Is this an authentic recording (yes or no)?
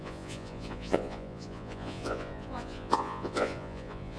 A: no